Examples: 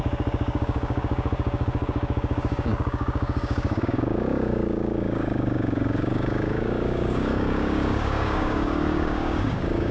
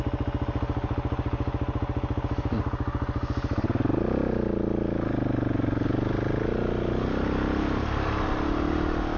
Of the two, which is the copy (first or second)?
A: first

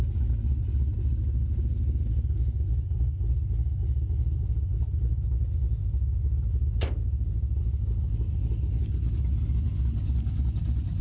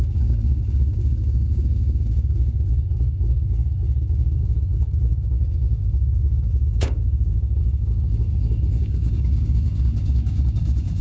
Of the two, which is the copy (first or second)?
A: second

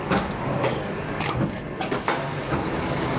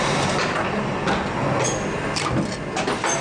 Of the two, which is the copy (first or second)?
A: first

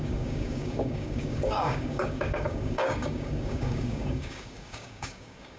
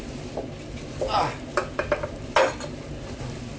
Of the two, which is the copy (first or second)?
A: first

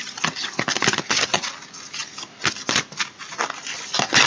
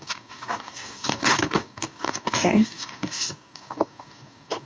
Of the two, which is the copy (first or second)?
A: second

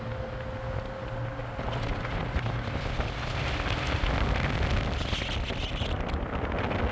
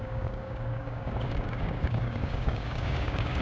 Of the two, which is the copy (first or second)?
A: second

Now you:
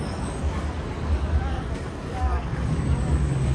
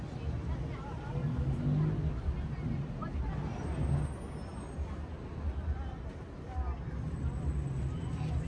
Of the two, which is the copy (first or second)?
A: first